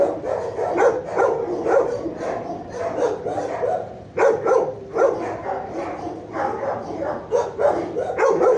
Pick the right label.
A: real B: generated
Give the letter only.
A